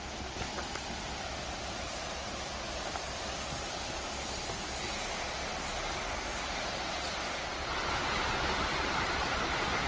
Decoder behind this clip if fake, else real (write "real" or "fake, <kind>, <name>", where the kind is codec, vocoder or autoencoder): real